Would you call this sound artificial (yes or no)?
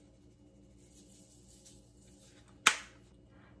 no